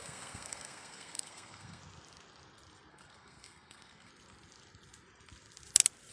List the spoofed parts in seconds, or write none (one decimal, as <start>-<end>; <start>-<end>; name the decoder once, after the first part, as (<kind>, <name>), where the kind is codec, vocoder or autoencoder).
0.0-1.8 (codec, SNAC); 2.9-4.1